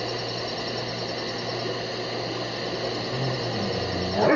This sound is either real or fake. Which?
real